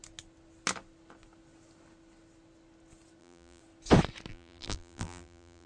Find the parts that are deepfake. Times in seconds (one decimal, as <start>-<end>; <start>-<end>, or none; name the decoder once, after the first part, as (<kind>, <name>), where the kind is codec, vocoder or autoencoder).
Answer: 3.2-3.6 (vocoder, BigVGAN v2); 4.3-5.7